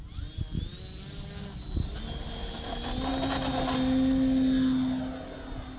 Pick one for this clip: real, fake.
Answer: real